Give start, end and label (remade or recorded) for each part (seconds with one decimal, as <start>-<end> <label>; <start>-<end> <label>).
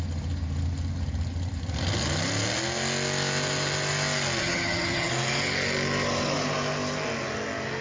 0.0-4.4 recorded; 4.4-5.1 remade; 5.1-7.8 recorded